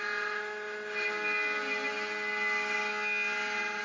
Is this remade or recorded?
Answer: recorded